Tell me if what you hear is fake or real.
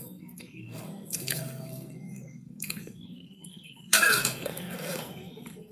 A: fake